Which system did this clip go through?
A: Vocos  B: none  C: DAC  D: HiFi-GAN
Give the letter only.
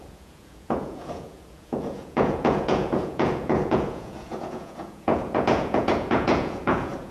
A